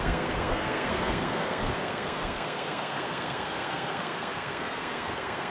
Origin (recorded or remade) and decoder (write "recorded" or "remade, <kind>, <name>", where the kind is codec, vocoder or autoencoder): remade, codec, SNAC